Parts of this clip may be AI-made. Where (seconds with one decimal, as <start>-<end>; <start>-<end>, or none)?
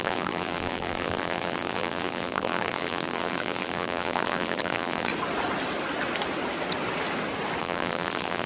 0.0-5.1; 7.6-8.5